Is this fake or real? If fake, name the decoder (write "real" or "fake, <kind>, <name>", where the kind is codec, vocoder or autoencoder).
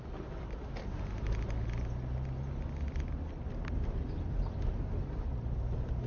real